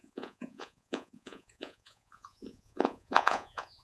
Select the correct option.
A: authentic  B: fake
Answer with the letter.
B